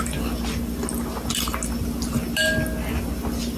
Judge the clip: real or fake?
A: real